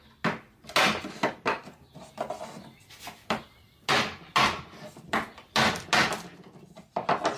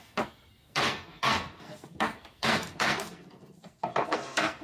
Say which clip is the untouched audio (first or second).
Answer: first